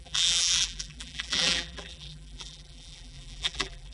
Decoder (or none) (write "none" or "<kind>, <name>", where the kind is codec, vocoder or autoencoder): vocoder, BigVGAN v2